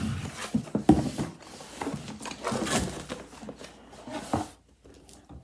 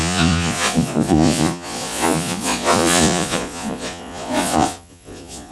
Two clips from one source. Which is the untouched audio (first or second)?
first